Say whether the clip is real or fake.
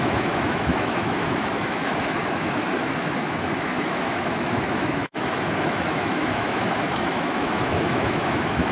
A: fake